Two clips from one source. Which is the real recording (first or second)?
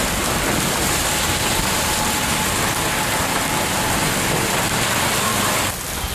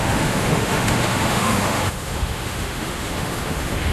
first